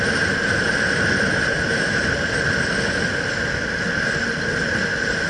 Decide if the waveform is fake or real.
real